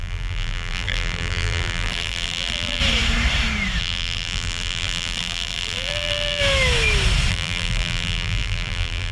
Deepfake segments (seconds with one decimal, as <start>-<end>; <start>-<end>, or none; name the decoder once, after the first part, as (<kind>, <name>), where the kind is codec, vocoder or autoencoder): 0.0-2.8 (vocoder, BigVGAN v2); 3.8-6.4; 7.3-9.1